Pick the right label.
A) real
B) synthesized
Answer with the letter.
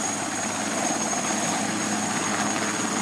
A